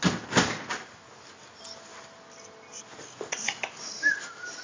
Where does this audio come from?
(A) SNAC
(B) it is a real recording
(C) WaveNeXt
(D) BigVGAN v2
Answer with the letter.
B